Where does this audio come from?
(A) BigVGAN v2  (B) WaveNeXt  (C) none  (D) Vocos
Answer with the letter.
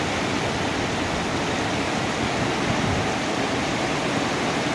C